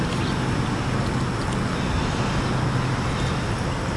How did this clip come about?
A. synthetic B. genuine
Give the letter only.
B